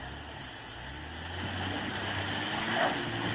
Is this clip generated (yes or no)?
no